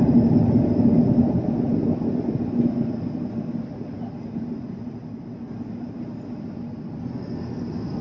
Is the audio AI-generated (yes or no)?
no